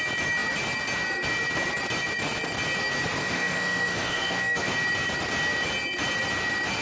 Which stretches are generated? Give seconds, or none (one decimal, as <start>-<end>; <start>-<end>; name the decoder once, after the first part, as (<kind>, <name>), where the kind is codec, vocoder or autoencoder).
3.2-4.7 (autoencoder, DAC-VAE)